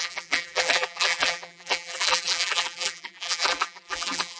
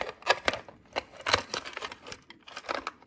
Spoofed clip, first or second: first